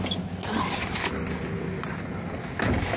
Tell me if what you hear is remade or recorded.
recorded